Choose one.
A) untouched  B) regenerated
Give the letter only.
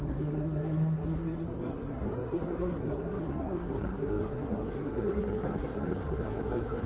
B